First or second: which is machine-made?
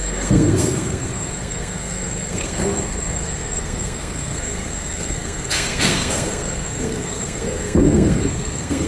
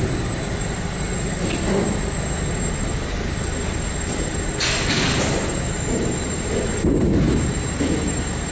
first